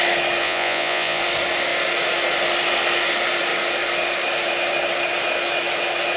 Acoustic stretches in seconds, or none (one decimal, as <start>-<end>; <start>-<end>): 0.0-0.4; 1.2-6.2